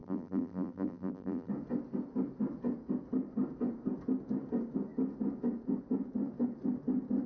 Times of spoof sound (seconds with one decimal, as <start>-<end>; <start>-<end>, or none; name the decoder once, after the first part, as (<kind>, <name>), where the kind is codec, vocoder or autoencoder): 0.0-1.5 (vocoder, BigVGAN v2)